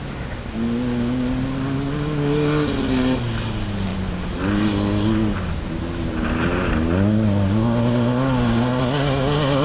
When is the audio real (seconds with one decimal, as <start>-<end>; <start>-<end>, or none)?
0.0-9.6